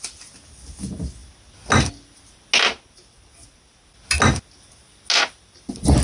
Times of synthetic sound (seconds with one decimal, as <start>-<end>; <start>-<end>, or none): none